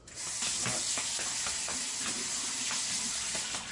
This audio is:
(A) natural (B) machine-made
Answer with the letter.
A